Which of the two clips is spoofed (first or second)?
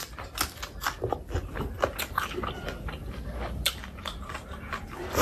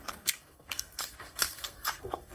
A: second